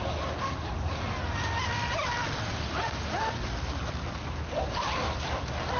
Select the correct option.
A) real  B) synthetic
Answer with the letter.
A